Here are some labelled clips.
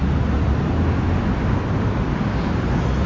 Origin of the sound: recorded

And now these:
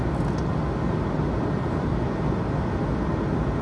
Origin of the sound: recorded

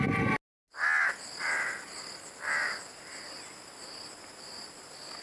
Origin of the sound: recorded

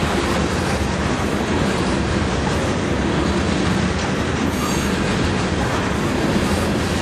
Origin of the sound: recorded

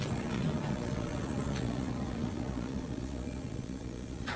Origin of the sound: remade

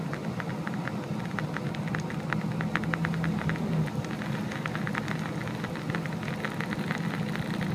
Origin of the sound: recorded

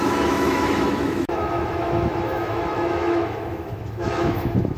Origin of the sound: remade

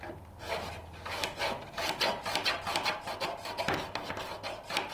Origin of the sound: recorded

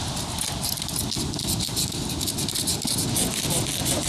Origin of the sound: recorded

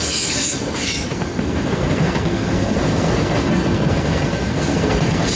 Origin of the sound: remade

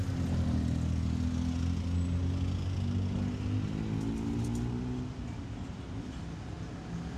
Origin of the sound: recorded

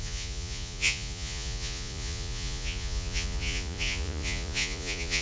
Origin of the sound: remade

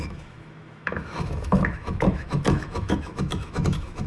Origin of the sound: remade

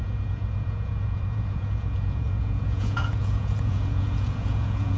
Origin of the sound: remade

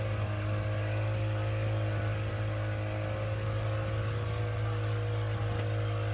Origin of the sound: recorded